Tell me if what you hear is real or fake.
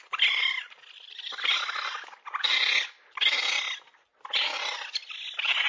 real